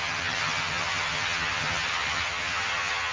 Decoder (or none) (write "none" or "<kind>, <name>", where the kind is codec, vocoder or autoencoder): vocoder, HiFi-GAN